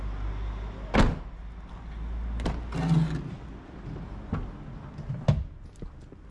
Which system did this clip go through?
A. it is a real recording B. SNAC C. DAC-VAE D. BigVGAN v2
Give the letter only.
A